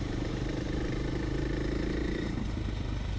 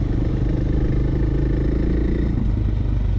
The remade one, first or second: first